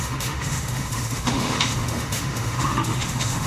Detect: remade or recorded remade